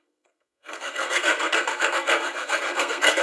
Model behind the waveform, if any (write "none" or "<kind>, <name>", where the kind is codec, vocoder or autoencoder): codec, SNAC